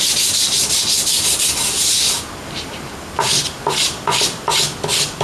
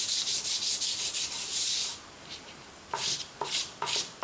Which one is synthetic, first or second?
second